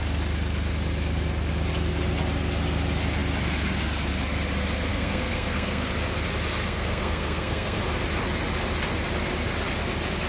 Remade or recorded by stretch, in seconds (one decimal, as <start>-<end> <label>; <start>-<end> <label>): 0.0-4.9 recorded; 4.9-5.9 remade; 5.9-6.6 recorded; 6.6-7.8 remade; 7.8-10.3 recorded